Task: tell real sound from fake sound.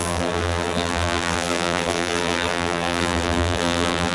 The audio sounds fake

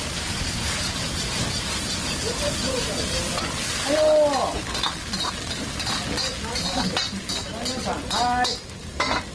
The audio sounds real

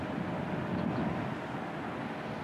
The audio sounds real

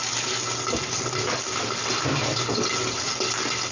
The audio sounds real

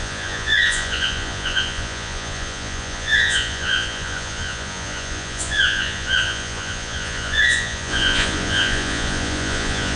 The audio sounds fake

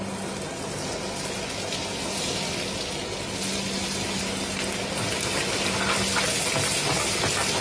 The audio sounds real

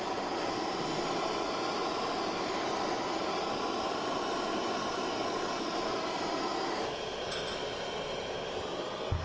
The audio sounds real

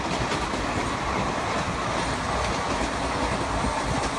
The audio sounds real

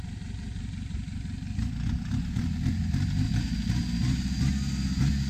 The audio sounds real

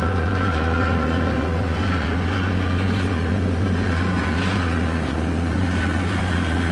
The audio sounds fake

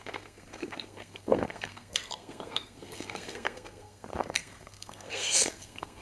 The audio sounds fake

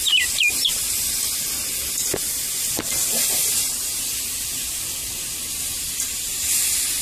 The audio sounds real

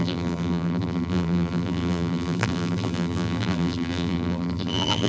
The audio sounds fake